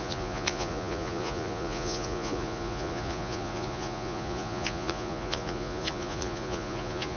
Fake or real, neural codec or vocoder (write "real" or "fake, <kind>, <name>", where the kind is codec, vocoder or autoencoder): fake, vocoder, Vocos